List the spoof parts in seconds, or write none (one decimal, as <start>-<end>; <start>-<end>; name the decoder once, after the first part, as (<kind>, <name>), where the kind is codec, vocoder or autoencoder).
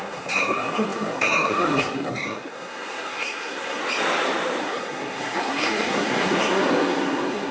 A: 0.0-3.8 (codec, SNAC); 4.6-7.5